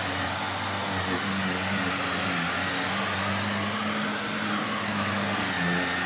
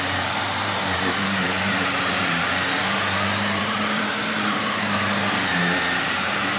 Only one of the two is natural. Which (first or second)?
first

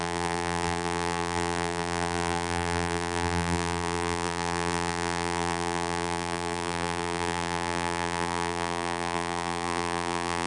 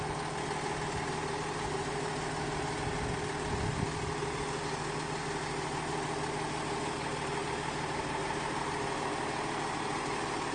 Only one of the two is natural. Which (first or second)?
second